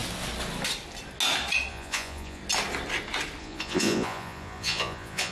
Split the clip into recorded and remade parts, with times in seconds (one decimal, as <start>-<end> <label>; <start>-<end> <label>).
0.0-1.7 recorded; 1.7-2.4 remade; 2.4-3.4 recorded; 3.4-5.3 remade